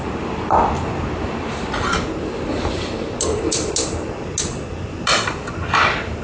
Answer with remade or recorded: recorded